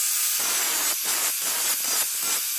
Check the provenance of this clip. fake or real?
real